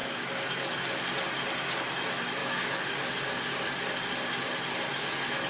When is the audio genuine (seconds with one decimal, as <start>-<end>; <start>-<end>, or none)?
0.9-2.4; 3.1-4.9